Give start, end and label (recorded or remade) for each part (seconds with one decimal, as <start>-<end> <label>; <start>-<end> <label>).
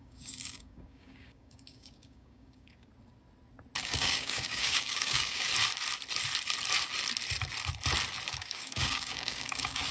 0.0-2.9 remade; 2.9-3.8 recorded; 3.8-5.5 remade; 5.5-8.3 recorded; 8.3-9.9 remade